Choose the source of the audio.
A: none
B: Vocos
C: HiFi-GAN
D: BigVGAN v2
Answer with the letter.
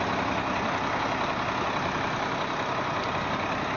A